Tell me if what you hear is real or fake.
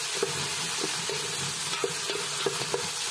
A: real